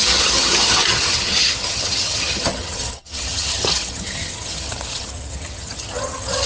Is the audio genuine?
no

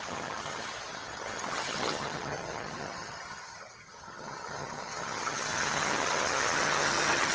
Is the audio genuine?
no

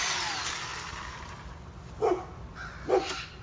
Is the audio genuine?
yes